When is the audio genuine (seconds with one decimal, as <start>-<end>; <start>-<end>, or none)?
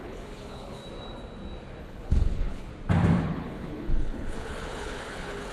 0.8-1.8; 2.7-3.2